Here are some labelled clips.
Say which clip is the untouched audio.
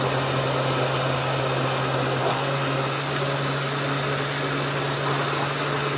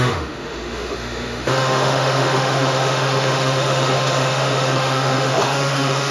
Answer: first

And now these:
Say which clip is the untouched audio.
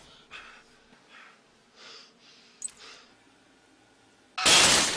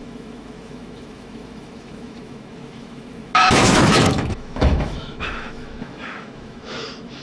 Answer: first